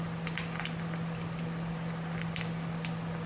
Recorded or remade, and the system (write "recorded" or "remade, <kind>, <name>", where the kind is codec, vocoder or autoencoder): recorded